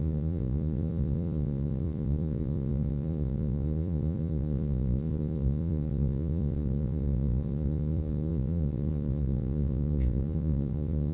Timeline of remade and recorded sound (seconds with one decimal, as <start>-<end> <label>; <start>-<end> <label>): 0.0-11.1 remade